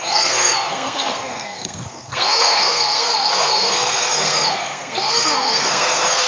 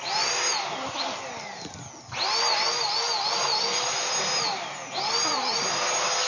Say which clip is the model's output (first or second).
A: first